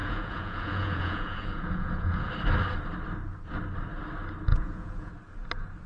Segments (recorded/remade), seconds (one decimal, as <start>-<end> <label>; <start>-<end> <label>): 0.0-2.3 remade; 2.3-4.5 recorded; 4.5-5.1 remade; 5.1-5.9 recorded